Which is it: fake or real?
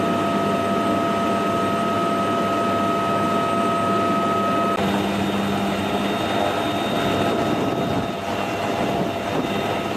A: real